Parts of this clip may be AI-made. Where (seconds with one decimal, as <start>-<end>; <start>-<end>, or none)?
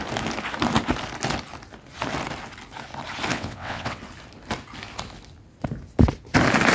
3.3-4.0